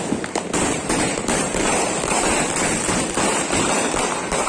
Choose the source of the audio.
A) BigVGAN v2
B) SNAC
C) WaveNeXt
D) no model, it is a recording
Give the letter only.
A